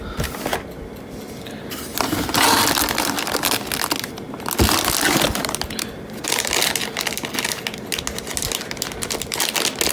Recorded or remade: recorded